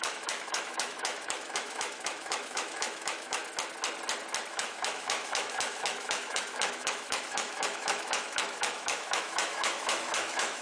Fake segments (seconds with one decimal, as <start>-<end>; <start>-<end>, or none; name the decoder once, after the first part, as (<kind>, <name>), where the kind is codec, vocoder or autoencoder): 0.0-3.4 (autoencoder, DAC-VAE); 4.5-10.6